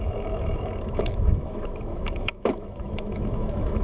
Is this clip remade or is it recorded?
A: remade